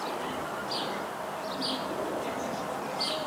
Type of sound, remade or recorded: recorded